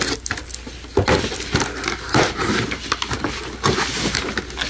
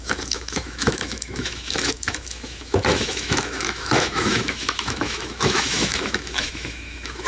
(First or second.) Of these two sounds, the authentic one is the first